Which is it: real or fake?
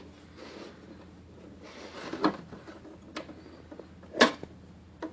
real